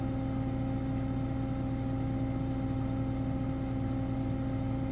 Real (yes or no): yes